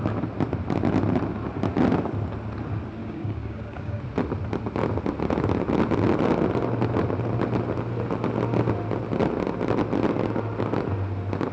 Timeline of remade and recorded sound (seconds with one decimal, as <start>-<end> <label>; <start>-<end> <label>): 0.0-3.0 recorded; 3.0-4.0 remade; 4.0-11.5 recorded